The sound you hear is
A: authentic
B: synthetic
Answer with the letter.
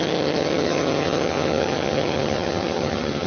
B